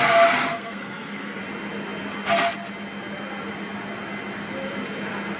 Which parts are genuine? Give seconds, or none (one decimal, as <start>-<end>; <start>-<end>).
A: 0.0-0.5; 1.4-5.4